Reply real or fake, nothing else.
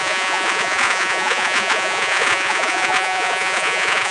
fake